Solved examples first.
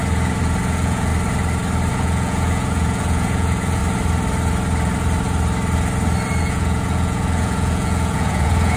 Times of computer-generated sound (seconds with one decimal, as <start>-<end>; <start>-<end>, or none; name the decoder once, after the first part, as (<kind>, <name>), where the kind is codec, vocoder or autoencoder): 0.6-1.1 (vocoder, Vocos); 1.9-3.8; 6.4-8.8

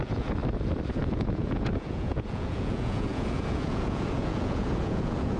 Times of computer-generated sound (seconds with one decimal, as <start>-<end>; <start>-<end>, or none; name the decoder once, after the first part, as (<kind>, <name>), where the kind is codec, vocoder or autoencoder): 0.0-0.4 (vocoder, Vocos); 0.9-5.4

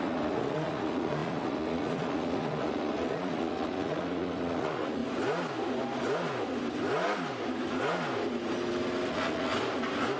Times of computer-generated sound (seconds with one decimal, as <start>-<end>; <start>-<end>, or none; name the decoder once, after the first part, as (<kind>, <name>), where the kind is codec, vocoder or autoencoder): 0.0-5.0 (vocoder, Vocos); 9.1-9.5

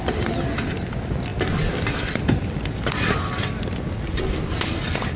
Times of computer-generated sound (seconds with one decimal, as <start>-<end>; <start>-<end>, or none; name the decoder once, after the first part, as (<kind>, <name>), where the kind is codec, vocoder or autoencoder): none

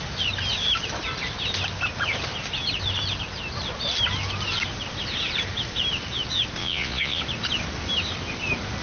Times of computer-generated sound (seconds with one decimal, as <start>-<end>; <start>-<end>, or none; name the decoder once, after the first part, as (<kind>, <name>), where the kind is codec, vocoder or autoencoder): 6.6-7.2 (vocoder, Vocos)

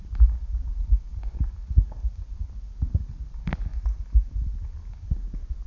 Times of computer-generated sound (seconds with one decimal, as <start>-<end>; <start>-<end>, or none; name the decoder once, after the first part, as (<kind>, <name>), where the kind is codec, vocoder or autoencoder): none

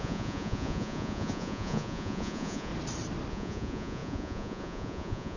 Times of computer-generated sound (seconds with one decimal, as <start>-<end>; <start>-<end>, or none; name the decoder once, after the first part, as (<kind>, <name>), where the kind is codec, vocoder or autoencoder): 0.0-2.7 (vocoder, Vocos); 3.3-5.4

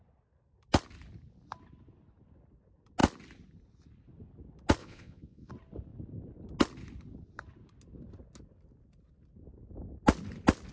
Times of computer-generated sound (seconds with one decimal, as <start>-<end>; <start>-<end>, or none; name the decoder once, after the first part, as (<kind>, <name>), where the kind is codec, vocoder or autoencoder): 4.8-5.5 (vocoder, Vocos)